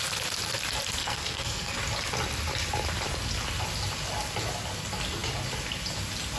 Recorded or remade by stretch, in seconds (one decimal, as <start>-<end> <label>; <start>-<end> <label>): 0.0-1.0 recorded; 1.0-1.8 remade; 1.8-6.4 recorded